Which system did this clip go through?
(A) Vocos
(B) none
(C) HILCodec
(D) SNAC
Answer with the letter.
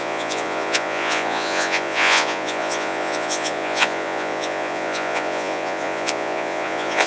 A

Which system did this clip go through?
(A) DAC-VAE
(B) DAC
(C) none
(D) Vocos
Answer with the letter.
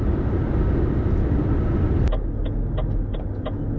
C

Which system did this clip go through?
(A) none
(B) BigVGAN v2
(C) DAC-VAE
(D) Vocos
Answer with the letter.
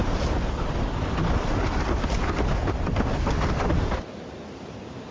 A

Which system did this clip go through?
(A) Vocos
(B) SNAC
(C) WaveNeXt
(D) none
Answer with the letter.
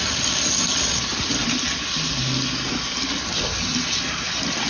D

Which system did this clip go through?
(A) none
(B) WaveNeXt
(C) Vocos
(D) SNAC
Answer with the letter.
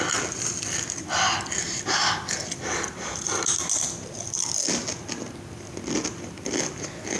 A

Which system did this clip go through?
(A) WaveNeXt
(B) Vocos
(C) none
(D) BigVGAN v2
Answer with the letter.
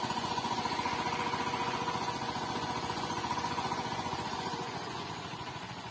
B